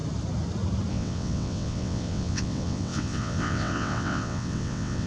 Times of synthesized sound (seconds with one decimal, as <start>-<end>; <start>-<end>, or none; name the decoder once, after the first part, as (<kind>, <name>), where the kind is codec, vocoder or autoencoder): 0.9-5.1 (vocoder, WaveNeXt)